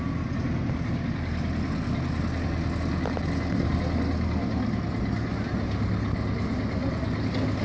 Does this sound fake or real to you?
real